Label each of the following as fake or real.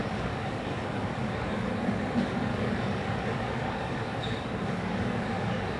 fake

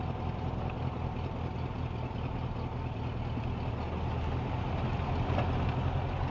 real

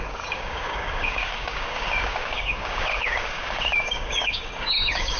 fake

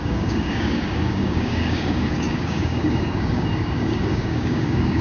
fake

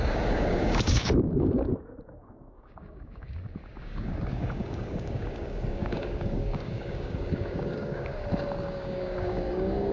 fake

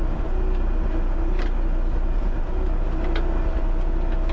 real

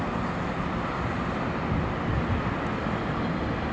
real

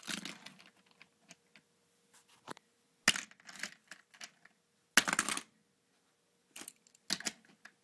real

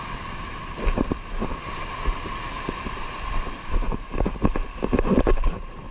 real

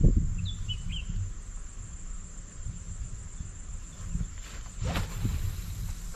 real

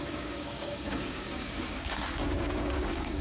fake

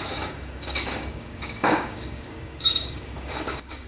fake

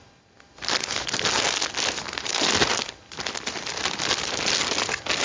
real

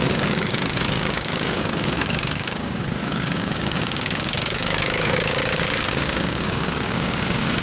fake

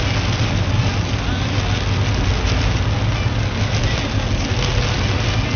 real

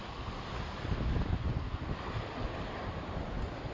real